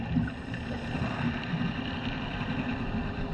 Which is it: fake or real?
real